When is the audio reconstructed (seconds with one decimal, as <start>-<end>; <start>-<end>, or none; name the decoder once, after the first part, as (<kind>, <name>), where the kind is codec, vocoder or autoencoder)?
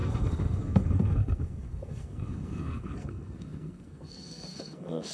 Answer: 0.0-5.1 (codec, SNAC)